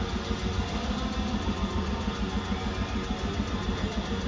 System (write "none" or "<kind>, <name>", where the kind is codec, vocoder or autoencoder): none